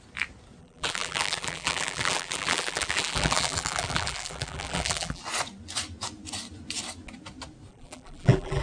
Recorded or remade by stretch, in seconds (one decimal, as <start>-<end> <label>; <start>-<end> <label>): 0.0-0.6 recorded; 0.6-5.2 remade; 5.2-7.7 recorded; 7.7-8.6 remade